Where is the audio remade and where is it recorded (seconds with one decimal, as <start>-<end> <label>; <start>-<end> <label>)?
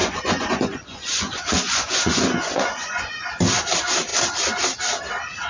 0.0-3.3 remade; 3.3-5.5 recorded